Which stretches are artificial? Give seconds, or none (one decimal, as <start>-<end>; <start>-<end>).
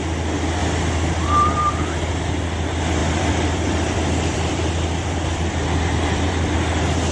3.0-6.5